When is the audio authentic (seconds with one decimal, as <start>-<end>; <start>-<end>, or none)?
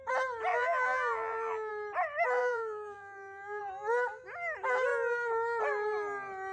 0.0-0.5; 1.7-2.4; 3.6-6.5